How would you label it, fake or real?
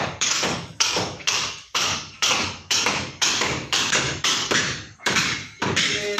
fake